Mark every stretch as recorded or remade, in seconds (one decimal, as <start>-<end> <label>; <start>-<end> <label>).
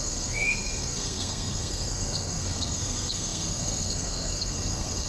0.0-5.1 remade